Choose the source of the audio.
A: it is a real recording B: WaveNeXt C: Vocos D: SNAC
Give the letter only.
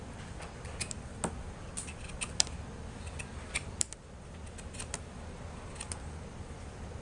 A